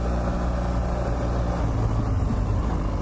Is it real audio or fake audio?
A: real